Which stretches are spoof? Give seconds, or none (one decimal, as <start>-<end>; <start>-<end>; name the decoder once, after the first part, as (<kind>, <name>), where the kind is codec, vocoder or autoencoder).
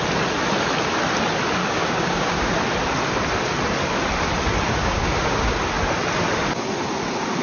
1.6-2.5 (codec, DAC); 4.8-5.5